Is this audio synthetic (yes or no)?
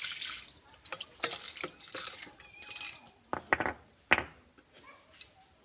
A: no